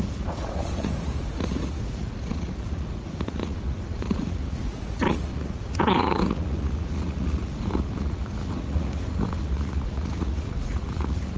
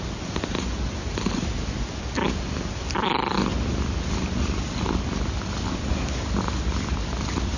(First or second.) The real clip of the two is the second